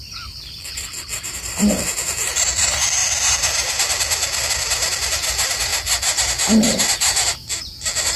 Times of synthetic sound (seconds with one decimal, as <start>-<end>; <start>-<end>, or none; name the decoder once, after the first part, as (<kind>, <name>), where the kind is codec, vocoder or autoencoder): 0.0-3.0 (vocoder, BigVGAN v2); 4.5-5.7; 7.5-8.2